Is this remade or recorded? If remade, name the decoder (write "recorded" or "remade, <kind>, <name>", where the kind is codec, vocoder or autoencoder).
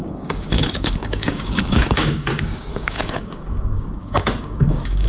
remade, codec, DAC